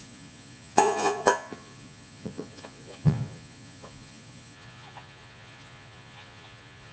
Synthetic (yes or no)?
yes